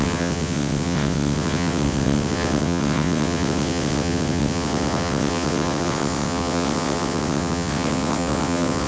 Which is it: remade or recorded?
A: remade